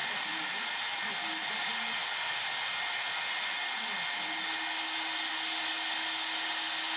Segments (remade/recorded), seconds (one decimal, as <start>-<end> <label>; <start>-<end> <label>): 0.0-1.5 remade; 1.5-7.0 recorded